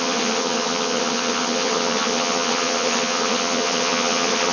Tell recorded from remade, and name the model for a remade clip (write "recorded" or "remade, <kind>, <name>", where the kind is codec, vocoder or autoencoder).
remade, vocoder, HiFi-GAN